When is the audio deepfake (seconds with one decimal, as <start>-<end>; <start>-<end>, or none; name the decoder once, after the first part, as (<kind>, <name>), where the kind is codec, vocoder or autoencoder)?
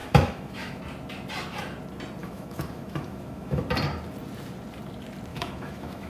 0.0-0.8 (autoencoder, DAC-VAE); 2.2-3.6; 5.3-6.1